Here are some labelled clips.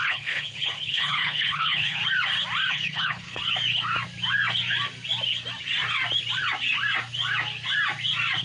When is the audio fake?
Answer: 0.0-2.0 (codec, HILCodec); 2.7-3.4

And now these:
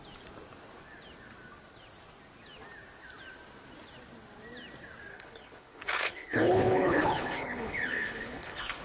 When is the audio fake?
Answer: 5.1-8.8 (codec, HILCodec)